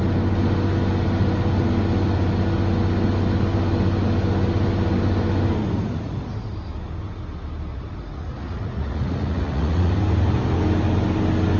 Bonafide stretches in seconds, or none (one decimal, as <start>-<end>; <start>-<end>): 0.0-7.7; 9.9-11.6